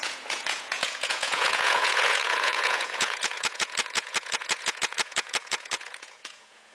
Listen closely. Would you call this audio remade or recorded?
remade